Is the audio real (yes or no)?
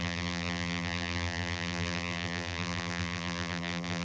no